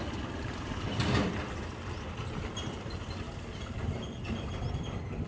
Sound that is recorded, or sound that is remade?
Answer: recorded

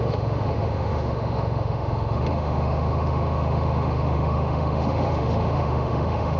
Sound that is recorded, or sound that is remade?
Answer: remade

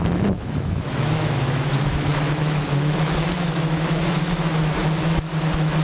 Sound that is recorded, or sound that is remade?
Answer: remade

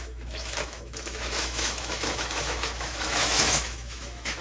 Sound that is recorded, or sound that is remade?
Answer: remade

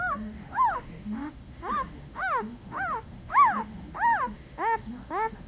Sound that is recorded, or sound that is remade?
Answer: remade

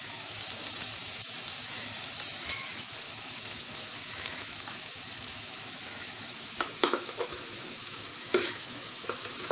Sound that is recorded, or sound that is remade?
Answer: remade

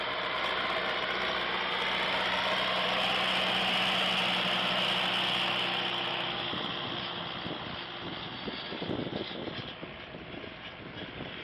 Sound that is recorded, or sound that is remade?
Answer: recorded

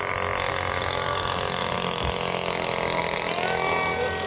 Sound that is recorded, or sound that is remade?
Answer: recorded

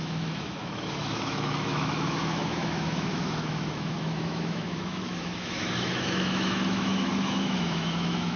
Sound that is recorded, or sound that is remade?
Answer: remade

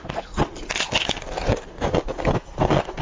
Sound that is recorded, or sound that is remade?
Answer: recorded